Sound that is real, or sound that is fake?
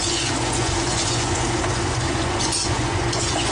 fake